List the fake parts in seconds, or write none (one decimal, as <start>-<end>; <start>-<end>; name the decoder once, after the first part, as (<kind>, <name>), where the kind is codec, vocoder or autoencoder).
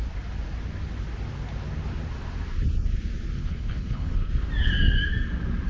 3.4-4.3 (codec, HILCodec)